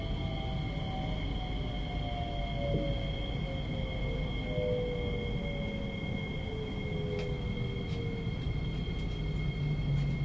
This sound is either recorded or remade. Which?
recorded